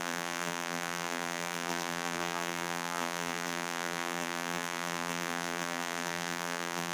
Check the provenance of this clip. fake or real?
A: fake